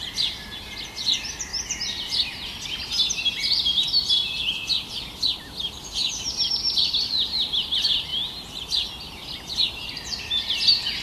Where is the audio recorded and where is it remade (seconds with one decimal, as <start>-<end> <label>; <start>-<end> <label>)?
0.0-11.0 recorded